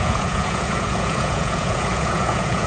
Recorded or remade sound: remade